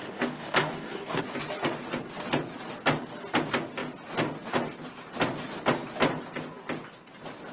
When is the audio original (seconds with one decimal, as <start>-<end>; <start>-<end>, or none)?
1.2-7.5